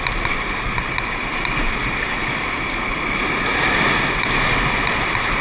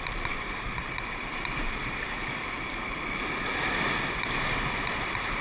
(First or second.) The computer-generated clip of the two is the second